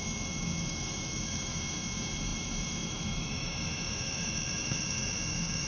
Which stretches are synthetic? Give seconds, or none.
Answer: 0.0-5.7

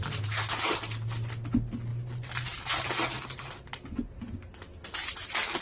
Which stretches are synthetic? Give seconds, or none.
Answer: none

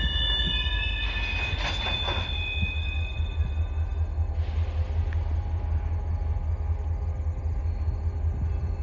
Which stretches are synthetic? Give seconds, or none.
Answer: none